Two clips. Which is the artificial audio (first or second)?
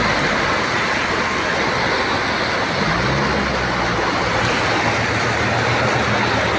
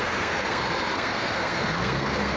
second